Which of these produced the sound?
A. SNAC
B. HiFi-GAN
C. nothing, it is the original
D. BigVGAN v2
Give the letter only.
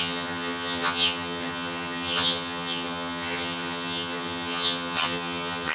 B